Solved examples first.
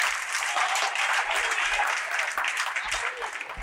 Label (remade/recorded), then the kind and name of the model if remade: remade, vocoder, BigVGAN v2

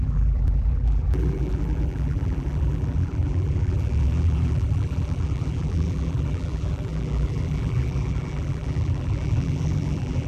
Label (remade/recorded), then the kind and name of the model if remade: remade, vocoder, BigVGAN v2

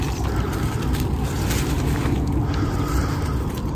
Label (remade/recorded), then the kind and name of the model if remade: recorded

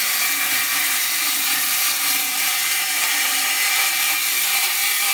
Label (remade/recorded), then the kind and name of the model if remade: remade, vocoder, BigVGAN v2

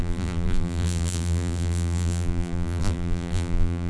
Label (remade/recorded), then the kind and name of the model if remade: remade, vocoder, BigVGAN v2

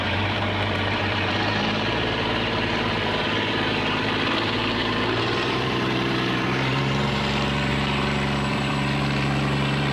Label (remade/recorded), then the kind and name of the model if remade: remade, vocoder, BigVGAN v2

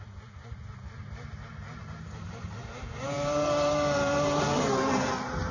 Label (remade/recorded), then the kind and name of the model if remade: remade, vocoder, BigVGAN v2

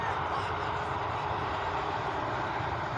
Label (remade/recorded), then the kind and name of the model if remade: remade, vocoder, BigVGAN v2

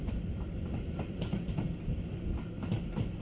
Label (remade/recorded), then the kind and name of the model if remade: recorded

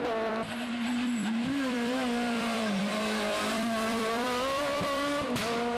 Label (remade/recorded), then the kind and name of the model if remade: remade, vocoder, BigVGAN v2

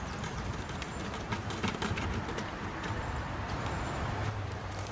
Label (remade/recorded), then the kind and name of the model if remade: remade, vocoder, BigVGAN v2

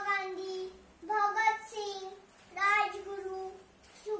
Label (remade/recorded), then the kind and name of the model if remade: recorded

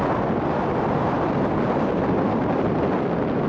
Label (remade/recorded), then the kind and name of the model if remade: recorded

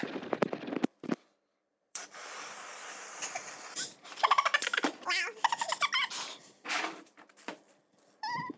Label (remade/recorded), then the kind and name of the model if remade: remade, vocoder, BigVGAN v2